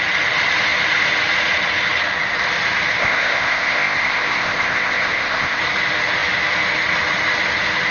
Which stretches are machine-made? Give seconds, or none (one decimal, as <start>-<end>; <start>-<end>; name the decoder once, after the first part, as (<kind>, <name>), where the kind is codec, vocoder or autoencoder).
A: 3.0-5.6 (codec, ZipCodec)